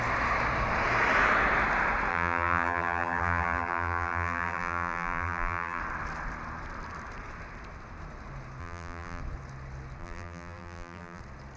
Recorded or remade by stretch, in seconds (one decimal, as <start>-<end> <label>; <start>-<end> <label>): 0.0-2.1 recorded; 2.1-5.8 remade; 5.8-8.6 recorded; 8.6-9.2 remade; 9.2-10.0 recorded; 10.0-11.2 remade; 11.2-11.6 recorded

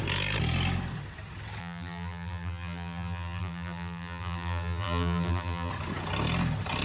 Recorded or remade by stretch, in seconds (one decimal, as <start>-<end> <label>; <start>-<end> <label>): 0.0-1.6 recorded; 1.6-5.7 remade; 5.7-6.8 recorded

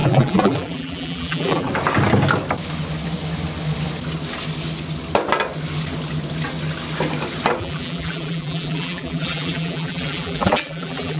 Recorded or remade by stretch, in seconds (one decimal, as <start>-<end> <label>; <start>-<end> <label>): 0.0-1.7 remade; 1.7-7.6 recorded; 7.6-11.2 remade

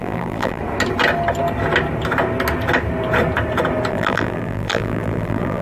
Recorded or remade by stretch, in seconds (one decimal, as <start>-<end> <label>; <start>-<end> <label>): 0.0-0.6 remade; 0.6-3.9 recorded; 3.9-5.6 remade